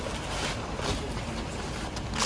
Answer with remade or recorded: recorded